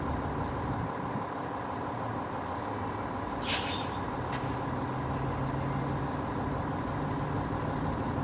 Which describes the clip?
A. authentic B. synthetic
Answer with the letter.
A